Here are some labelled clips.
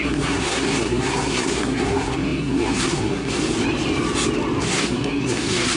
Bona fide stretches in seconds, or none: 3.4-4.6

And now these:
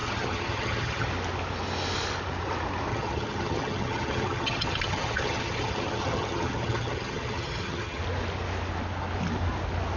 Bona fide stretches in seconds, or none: 1.1-2.9; 8.0-10.0

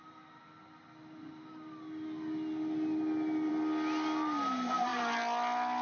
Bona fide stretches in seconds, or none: 0.0-5.8

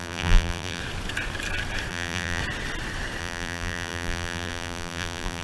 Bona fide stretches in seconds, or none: 0.8-1.9; 2.4-3.2

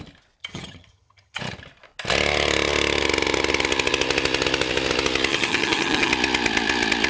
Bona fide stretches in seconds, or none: 0.0-0.4; 1.4-5.3; 6.1-7.1

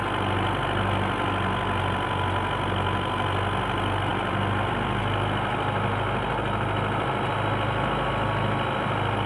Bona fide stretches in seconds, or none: 0.0-4.1; 5.0-9.3

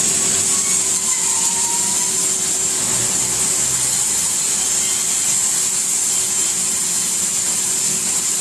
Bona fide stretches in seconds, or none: 0.0-8.4